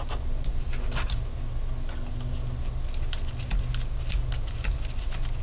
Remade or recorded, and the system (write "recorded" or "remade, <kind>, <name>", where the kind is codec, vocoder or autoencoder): recorded